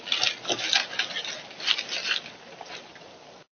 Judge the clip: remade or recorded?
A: recorded